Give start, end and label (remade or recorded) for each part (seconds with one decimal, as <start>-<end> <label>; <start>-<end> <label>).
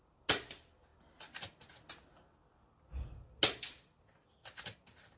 0.0-5.2 recorded